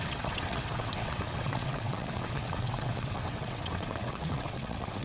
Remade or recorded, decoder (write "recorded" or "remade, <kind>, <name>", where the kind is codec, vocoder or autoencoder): remade, vocoder, WaveNeXt